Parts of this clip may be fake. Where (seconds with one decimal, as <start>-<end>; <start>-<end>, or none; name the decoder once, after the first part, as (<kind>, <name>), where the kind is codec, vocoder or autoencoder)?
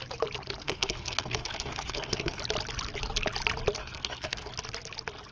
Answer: 0.6-2.4 (codec, SNAC); 3.8-4.5